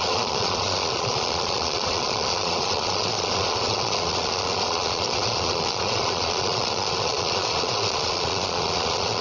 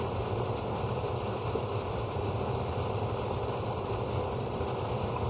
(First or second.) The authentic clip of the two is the second